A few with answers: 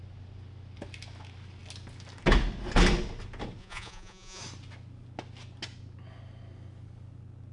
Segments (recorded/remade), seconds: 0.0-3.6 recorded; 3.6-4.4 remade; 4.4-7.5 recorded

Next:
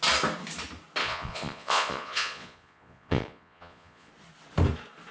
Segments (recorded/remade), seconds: 0.0-1.0 recorded; 1.0-4.1 remade; 4.1-5.1 recorded

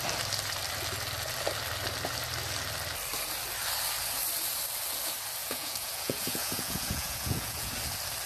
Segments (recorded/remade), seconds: 0.0-5.4 recorded; 5.4-7.7 remade; 7.7-8.3 recorded

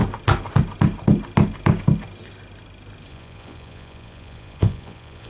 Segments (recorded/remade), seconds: 0.0-3.1 recorded; 3.1-5.3 remade